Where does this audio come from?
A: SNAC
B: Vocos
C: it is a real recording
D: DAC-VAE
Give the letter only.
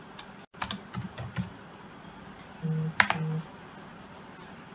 C